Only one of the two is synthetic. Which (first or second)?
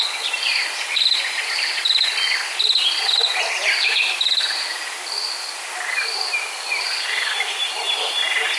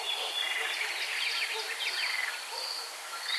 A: first